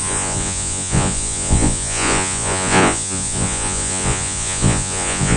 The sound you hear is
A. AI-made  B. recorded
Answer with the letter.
A